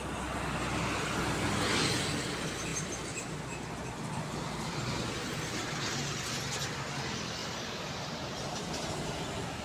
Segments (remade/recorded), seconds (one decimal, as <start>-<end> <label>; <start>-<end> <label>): 0.0-7.4 recorded; 7.4-9.1 remade; 9.1-9.6 recorded